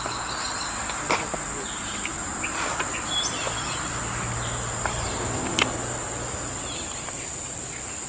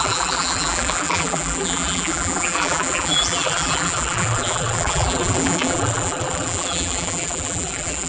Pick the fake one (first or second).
second